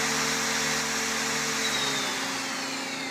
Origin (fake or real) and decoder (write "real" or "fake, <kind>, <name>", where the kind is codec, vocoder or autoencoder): real